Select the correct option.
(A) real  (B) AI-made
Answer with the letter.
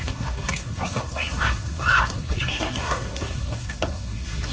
B